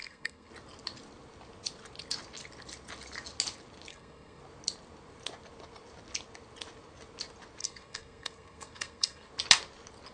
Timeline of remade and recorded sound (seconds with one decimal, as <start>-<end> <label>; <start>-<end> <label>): 0.0-0.5 remade; 0.5-3.9 recorded; 3.9-4.4 remade; 4.4-7.6 recorded; 7.6-9.3 remade; 9.3-10.1 recorded